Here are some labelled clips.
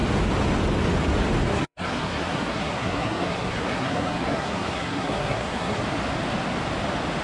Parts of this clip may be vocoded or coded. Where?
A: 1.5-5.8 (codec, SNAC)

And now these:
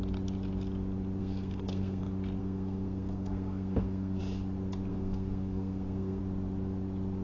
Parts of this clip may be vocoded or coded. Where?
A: 1.2-2.0 (codec, SNAC); 2.4-4.2; 4.9-6.2

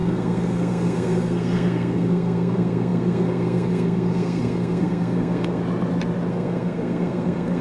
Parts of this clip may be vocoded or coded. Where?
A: 0.0-5.6 (codec, SNAC); 6.3-7.6

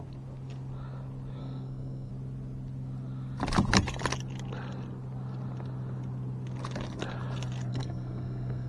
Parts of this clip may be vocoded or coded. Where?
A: 1.4-2.1 (codec, SNAC); 7.7-8.7

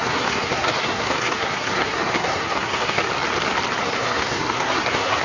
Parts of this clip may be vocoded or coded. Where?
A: 0.0-3.1 (codec, SNAC); 3.8-5.2

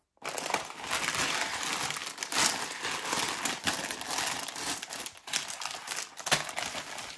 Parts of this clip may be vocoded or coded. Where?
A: none